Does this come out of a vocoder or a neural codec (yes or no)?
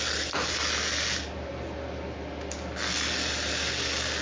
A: no